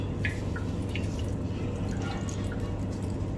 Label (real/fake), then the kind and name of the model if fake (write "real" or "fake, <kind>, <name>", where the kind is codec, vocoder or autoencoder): real